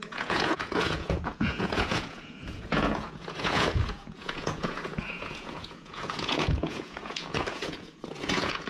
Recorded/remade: remade